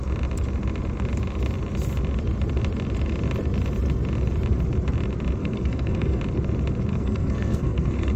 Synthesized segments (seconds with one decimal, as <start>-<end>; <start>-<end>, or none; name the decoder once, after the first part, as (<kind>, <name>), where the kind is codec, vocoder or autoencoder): 5.4-6.2 (codec, SNAC); 6.9-8.2